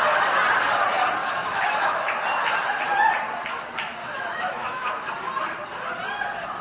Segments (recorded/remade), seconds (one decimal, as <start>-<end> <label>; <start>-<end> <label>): 0.0-1.2 recorded; 1.2-2.1 remade; 2.1-4.0 recorded; 4.0-5.1 remade; 5.1-6.6 recorded